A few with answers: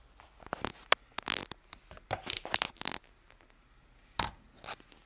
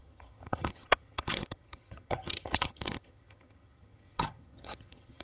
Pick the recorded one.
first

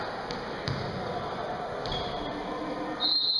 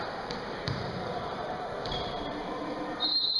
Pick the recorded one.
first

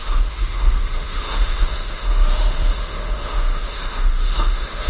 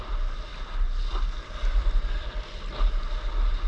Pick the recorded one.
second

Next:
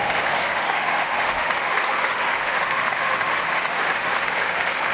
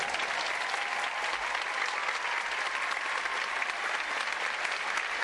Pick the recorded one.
second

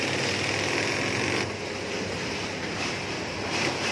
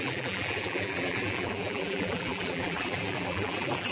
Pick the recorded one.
first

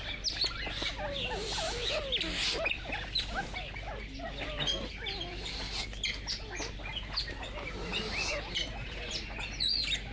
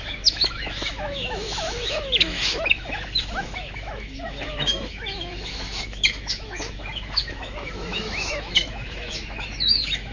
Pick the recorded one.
first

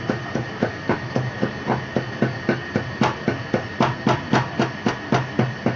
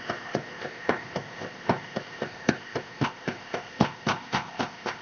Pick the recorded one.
first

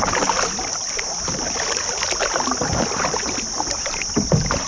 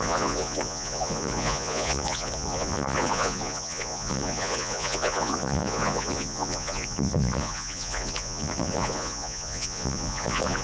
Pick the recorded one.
first